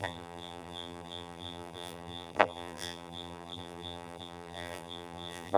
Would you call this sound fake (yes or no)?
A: yes